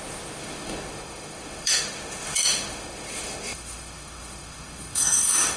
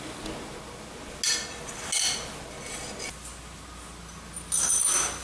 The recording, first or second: second